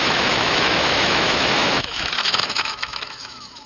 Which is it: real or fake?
fake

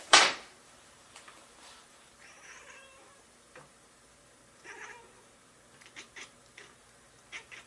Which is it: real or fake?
fake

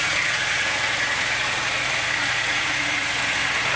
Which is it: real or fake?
fake